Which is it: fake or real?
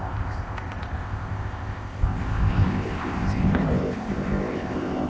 fake